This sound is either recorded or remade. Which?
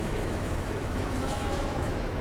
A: remade